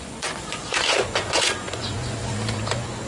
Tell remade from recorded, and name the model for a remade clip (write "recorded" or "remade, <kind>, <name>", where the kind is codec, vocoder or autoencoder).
remade, vocoder, Vocos